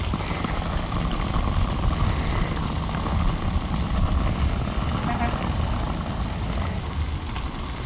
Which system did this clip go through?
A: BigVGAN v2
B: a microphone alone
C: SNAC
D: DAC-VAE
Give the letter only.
B